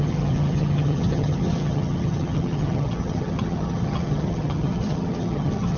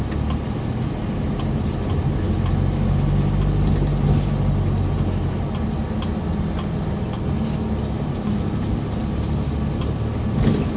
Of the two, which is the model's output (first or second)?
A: first